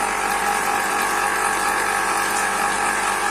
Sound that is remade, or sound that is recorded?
recorded